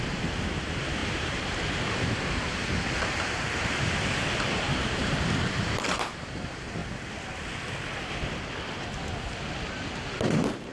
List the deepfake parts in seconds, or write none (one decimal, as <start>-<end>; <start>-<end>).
0.0-6.8; 10.1-10.7